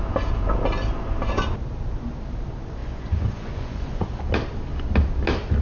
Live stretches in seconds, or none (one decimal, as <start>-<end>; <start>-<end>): 0.0-2.8; 4.2-5.6